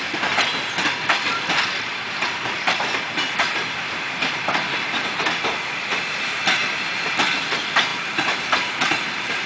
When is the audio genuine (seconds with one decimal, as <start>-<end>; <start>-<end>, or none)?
0.0-1.9; 6.6-7.9